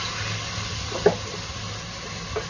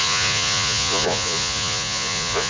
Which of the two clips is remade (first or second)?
second